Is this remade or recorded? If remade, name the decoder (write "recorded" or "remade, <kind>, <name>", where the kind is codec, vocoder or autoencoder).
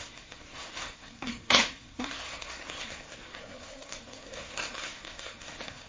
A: remade, codec, SNAC